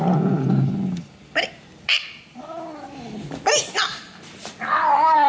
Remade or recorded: recorded